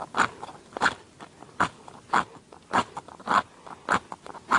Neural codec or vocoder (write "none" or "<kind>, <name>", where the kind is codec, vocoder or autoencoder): none